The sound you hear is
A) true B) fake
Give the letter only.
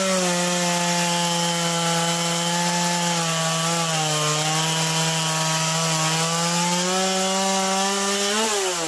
A